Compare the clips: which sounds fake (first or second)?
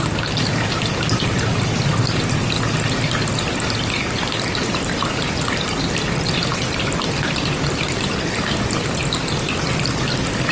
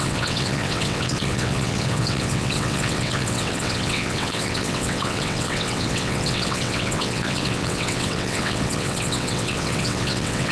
second